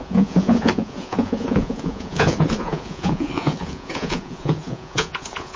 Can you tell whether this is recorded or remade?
remade